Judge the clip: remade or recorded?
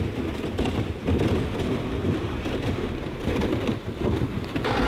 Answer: recorded